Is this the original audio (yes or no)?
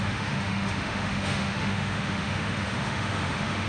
no